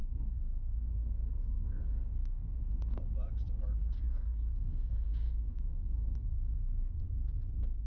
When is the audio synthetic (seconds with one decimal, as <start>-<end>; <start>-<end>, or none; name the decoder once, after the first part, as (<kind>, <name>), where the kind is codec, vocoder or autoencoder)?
0.0-1.8 (codec, SNAC); 2.2-3.0; 3.8-7.0